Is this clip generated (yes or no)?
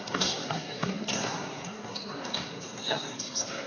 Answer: yes